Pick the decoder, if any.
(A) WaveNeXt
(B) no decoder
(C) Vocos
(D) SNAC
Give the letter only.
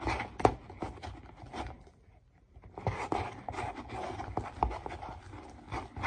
B